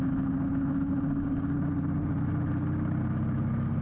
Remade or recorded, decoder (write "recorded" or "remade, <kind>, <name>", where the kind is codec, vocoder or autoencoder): recorded